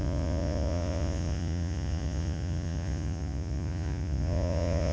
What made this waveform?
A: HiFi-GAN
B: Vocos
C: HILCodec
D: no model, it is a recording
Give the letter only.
B